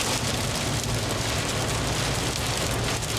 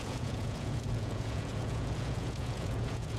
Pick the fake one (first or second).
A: second